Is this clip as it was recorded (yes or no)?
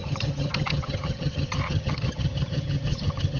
no